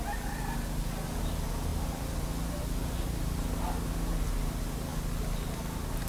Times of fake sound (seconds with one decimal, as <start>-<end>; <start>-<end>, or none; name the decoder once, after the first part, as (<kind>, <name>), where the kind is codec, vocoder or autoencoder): none